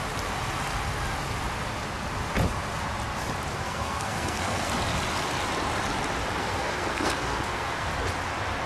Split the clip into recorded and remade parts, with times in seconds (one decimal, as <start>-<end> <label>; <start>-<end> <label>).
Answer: 0.0-3.5 recorded; 3.5-4.7 remade; 4.7-6.4 recorded; 6.4-7.9 remade; 7.9-8.7 recorded